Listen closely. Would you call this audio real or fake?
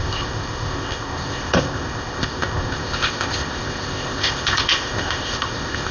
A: fake